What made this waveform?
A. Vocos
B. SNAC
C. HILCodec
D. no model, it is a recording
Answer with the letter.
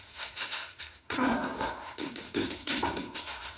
B